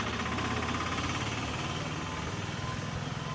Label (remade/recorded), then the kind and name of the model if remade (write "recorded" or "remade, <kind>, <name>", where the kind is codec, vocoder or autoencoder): recorded